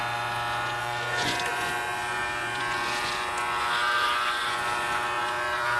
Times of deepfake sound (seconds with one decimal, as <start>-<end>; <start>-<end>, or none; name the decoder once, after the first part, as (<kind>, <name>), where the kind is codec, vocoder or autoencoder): 0.0-5.8 (vocoder, Vocos)